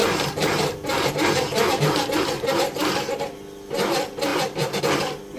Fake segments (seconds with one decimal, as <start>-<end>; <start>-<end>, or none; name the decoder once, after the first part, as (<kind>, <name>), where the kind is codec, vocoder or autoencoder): 0.0-3.2 (vocoder, BigVGAN v2)